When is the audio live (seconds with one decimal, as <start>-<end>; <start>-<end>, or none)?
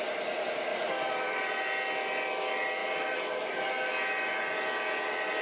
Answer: 0.0-0.7; 1.6-2.8; 3.5-5.4